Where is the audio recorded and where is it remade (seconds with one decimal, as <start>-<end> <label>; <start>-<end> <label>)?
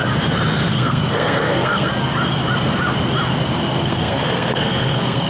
0.0-0.6 recorded; 0.6-1.9 remade; 1.9-3.8 recorded; 3.8-5.3 remade